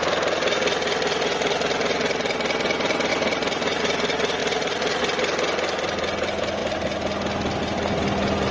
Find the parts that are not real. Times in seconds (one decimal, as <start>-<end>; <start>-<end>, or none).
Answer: 3.1-3.8; 4.4-5.0